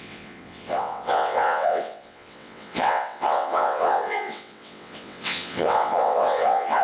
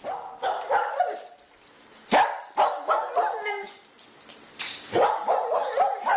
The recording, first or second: second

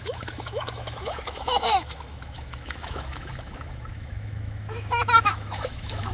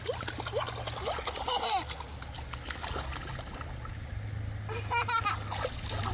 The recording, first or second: second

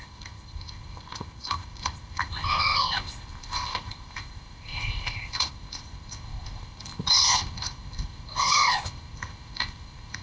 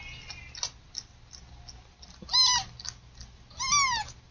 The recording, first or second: second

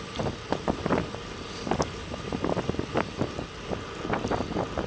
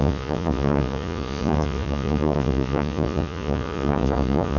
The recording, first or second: first